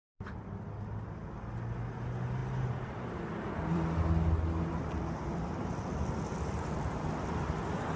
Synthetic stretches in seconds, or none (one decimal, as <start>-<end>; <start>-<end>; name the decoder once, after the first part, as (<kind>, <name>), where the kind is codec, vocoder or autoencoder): none